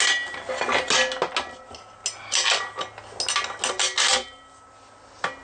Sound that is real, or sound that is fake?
real